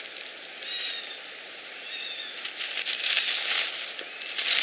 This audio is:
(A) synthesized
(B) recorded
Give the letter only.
B